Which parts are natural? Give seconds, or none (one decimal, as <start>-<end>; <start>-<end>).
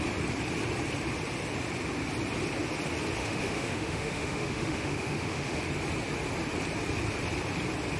0.0-3.2; 5.6-8.0